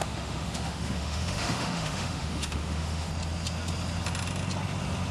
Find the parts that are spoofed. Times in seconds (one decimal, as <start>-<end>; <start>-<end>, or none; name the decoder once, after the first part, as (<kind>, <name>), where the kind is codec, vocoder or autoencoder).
0.0-3.1 (autoencoder, DAC-VAE)